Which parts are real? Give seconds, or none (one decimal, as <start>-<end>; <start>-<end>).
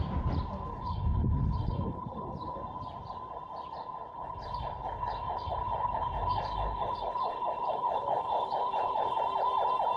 0.0-0.7; 2.6-4.1; 9.2-10.0